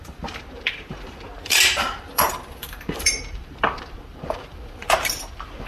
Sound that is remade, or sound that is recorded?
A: remade